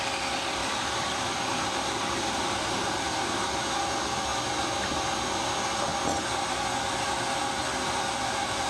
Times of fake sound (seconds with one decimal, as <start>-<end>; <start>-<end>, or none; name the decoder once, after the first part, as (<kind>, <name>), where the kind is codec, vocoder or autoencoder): 0.6-3.6 (vocoder, BigVGAN v2)